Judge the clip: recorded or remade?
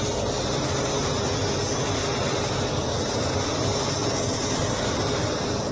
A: recorded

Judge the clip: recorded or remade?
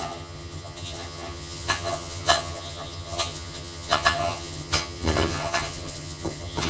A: remade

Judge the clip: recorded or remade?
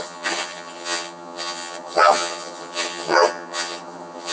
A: remade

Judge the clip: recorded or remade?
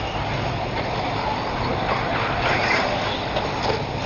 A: recorded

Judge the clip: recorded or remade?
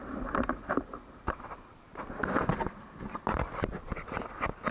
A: recorded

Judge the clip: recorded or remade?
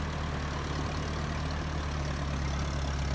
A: recorded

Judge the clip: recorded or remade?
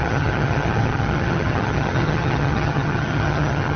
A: remade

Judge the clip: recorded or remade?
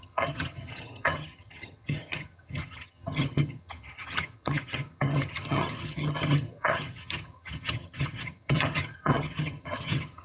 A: remade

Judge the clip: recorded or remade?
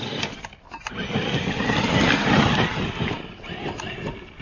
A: recorded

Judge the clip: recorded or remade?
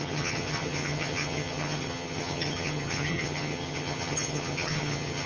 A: remade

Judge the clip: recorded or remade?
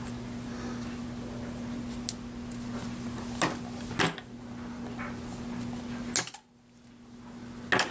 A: recorded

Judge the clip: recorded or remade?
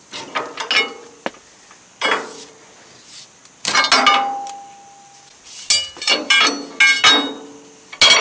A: recorded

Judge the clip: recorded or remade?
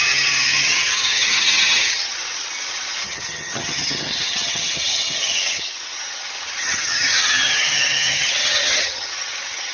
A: remade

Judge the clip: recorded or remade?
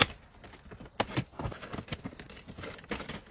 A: recorded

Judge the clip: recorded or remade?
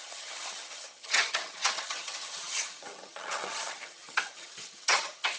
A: remade